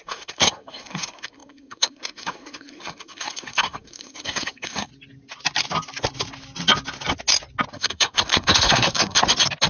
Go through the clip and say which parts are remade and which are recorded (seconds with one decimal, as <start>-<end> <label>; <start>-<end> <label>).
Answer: 0.0-4.9 remade; 4.9-7.7 recorded; 7.7-9.2 remade; 9.2-9.7 recorded